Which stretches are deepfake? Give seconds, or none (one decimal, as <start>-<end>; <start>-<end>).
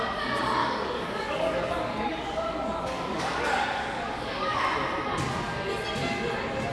0.6-4.6